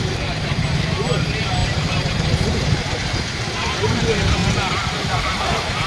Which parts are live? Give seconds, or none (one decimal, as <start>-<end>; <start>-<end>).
4.4-5.2